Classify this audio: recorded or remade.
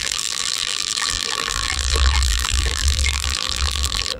remade